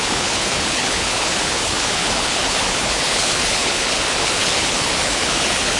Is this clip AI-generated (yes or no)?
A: yes